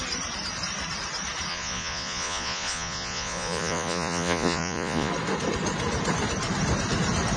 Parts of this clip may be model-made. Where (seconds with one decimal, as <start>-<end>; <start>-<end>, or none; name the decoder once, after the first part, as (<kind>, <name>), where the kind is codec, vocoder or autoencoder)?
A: 1.5-5.1 (vocoder, Vocos)